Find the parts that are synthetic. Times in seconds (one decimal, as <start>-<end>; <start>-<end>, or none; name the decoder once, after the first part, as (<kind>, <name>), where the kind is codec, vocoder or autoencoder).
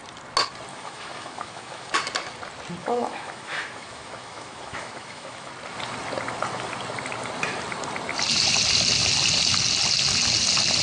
0.7-1.9 (autoencoder, DAC-VAE); 2.8-5.5